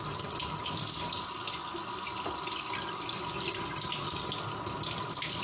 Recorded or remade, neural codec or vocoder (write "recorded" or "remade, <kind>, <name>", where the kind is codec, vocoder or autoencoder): recorded